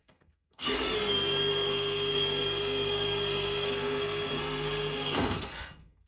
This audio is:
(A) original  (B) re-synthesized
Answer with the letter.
B